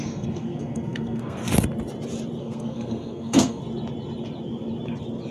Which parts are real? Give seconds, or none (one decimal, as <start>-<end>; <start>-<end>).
1.4-2.4; 3.6-5.3